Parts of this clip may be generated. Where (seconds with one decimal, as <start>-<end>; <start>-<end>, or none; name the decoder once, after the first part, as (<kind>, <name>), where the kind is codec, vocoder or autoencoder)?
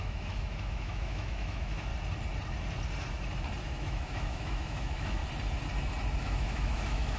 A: 0.0-1.9 (autoencoder, DAC-VAE); 3.6-5.2; 6.2-7.2